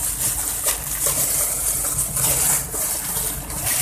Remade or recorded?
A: recorded